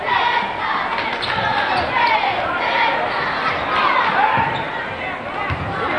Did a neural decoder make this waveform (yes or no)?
no